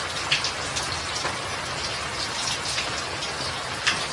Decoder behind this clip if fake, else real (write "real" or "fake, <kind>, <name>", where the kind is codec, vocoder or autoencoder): real